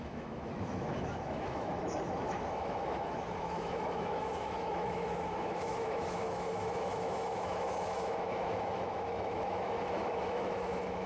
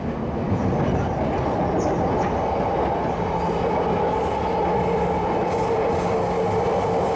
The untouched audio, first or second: second